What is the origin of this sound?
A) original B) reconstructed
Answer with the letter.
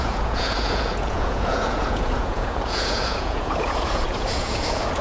B